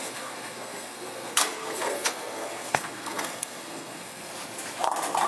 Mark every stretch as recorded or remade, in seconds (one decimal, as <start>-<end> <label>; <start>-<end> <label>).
0.0-4.3 remade; 4.3-5.3 recorded